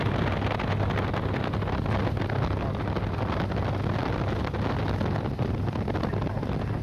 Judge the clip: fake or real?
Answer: real